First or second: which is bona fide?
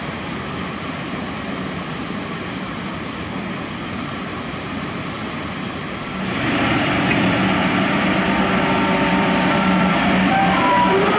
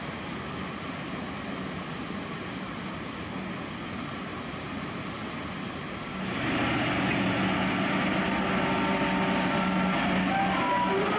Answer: second